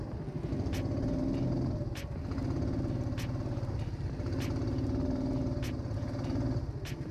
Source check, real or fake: real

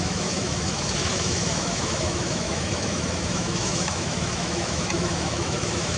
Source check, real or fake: fake